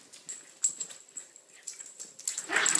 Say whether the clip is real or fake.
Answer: real